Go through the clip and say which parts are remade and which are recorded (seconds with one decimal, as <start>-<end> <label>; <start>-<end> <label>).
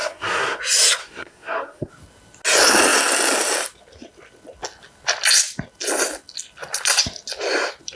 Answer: 0.0-0.6 remade; 0.6-1.0 recorded; 1.0-1.9 remade; 1.9-8.0 recorded